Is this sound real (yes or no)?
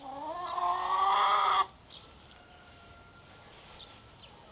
yes